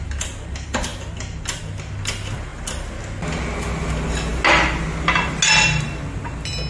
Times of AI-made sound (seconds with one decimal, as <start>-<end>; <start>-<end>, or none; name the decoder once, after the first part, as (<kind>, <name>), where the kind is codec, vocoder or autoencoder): none